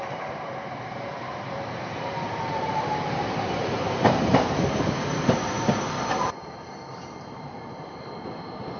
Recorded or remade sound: remade